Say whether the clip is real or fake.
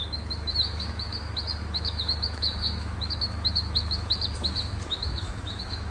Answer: fake